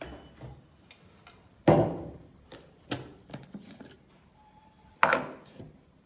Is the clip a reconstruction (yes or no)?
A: no